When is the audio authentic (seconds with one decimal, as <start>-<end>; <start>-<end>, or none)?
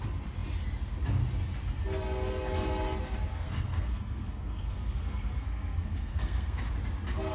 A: 0.0-3.3; 6.6-7.3